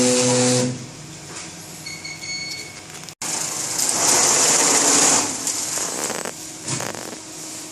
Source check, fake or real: real